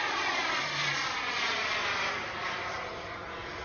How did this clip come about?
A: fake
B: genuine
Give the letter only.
B